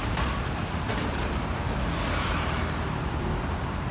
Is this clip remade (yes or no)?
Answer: no